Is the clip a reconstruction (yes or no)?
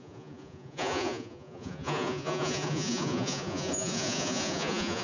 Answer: yes